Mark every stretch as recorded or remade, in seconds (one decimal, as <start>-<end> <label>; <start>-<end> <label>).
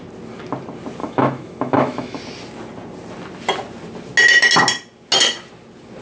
0.0-1.0 recorded; 1.0-2.2 remade; 2.2-6.0 recorded